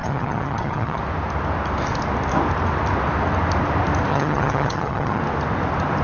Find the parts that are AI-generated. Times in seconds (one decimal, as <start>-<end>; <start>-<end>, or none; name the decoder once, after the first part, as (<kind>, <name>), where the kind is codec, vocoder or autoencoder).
0.0-1.0 (vocoder, HiFi-GAN); 4.1-5.2